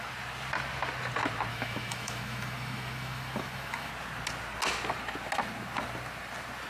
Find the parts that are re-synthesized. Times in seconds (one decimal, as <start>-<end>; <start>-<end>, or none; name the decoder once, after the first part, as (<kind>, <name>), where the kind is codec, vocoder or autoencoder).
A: 1.5-3.9 (autoencoder, DAC-VAE)